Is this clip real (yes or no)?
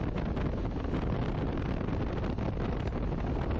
yes